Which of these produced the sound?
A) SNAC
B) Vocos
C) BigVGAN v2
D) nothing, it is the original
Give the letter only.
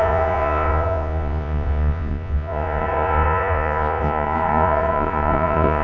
B